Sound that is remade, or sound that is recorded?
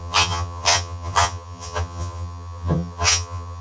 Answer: remade